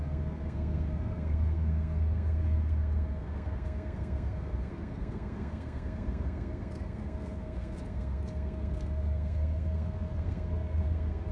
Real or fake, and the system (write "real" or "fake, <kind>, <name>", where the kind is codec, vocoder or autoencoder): fake, codec, SNAC